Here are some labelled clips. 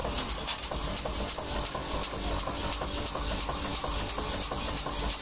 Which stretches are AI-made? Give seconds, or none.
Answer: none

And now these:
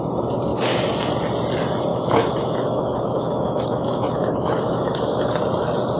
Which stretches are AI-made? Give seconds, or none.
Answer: 1.9-5.4 (autoencoder, DAC-VAE)